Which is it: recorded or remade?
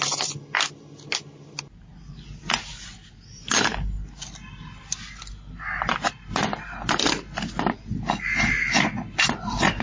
recorded